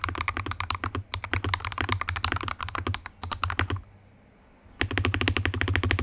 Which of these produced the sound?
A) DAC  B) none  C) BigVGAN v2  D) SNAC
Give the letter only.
B